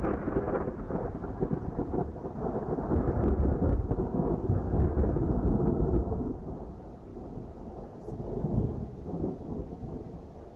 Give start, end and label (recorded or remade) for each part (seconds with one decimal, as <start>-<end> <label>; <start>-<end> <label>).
0.0-4.0 recorded; 4.0-5.1 remade; 5.1-10.6 recorded